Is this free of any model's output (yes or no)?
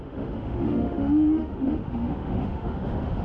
no